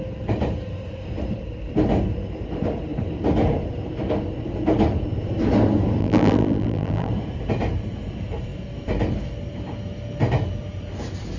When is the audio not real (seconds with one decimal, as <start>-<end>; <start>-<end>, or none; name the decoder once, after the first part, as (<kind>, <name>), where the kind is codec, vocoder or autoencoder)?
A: 6.0-7.1 (vocoder, BigVGAN v2)